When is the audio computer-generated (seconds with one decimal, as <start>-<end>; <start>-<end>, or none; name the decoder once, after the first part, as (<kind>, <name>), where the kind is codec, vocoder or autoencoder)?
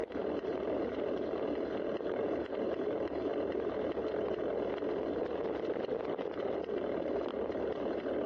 0.0-3.3 (vocoder, BigVGAN v2); 6.0-7.3